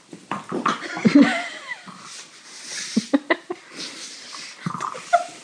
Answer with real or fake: fake